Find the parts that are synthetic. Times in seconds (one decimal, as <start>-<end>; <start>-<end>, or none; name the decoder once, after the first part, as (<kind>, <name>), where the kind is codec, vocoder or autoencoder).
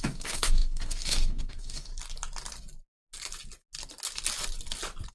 0.0-1.9 (codec, DAC)